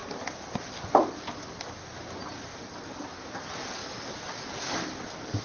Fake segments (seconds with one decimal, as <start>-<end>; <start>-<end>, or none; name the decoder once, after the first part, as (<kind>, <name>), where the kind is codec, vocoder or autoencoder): 3.8-4.8 (vocoder, BigVGAN v2)